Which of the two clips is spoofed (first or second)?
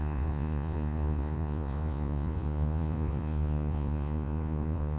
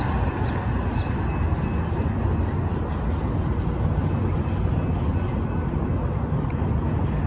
first